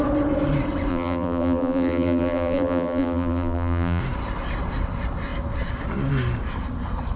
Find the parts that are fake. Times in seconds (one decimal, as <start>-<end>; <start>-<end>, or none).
0.9-4.0